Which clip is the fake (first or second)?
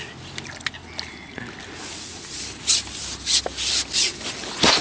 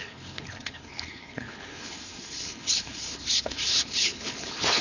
second